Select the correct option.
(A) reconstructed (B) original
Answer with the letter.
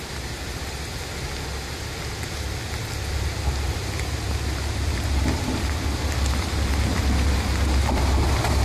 B